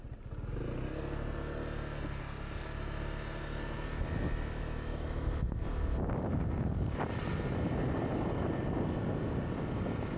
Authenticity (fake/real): real